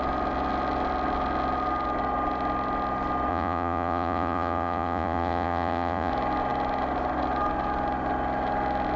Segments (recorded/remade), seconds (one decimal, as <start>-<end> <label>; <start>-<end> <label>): 0.0-3.3 recorded; 3.3-6.1 remade; 6.1-9.0 recorded